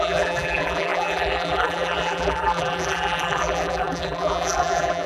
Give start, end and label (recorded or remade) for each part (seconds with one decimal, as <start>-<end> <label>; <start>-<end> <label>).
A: 0.0-5.1 remade